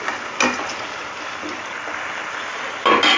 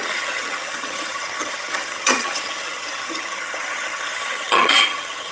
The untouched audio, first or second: first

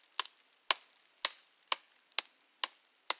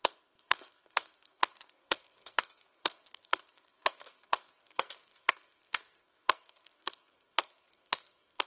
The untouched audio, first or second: first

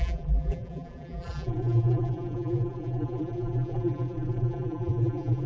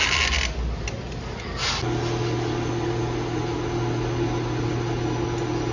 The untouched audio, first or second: second